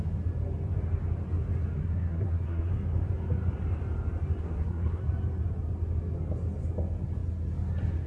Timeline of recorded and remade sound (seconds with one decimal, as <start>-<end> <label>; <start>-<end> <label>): 0.0-1.8 recorded; 1.8-2.7 remade; 2.7-4.4 recorded; 4.4-5.0 remade; 5.0-8.1 recorded